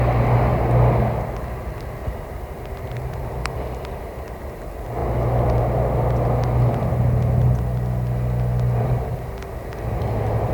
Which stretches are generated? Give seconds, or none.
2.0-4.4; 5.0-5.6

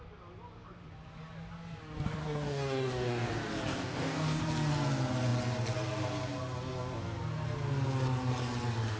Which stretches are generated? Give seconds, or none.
2.2-3.3; 3.7-4.4

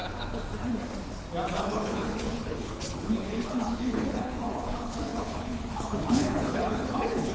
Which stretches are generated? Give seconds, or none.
1.6-7.3